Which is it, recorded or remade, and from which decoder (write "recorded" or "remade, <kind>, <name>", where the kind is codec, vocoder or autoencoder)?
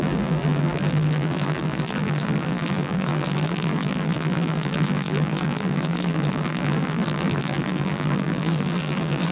remade, vocoder, BigVGAN v2